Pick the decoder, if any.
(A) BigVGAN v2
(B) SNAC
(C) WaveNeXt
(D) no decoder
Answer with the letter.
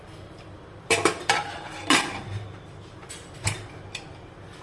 A